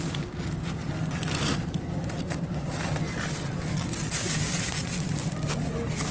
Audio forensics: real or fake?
real